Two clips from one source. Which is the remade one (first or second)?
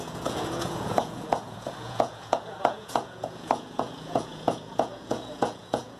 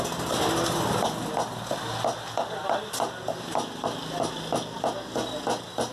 first